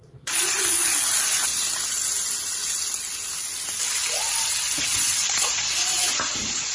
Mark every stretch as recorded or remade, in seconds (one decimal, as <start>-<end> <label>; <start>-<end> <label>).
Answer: 0.0-1.5 remade; 1.5-4.8 recorded; 4.8-6.7 remade